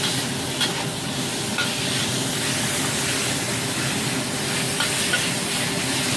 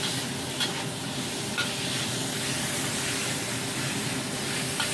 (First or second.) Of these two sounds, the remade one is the first